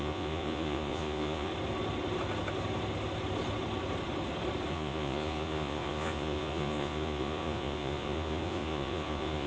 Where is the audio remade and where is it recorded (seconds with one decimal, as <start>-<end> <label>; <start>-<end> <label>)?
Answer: 0.0-1.5 remade; 1.5-4.7 recorded; 4.7-9.5 remade